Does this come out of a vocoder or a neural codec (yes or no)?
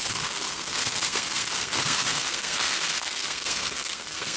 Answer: yes